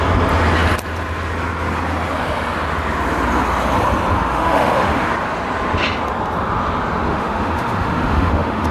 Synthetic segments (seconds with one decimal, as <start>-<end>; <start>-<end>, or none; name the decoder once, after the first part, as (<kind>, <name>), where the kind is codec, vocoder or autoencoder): 4.3-5.1 (autoencoder, DAC-VAE); 7.1-8.7